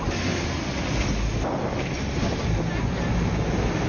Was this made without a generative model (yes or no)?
yes